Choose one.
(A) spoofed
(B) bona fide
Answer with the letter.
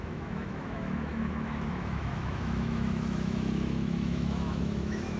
A